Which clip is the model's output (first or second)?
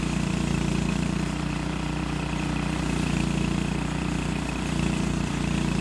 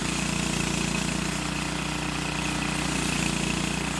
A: first